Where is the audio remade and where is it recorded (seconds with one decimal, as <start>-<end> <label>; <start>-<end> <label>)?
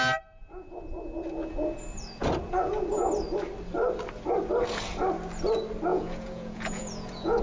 0.0-5.9 recorded; 5.9-7.4 remade